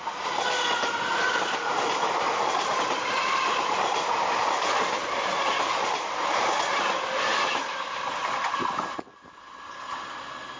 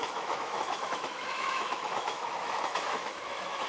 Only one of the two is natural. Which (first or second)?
first